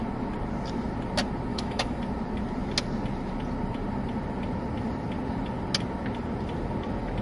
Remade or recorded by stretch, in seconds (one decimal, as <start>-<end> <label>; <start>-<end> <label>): 0.0-1.5 recorded; 1.5-2.0 remade; 2.0-7.2 recorded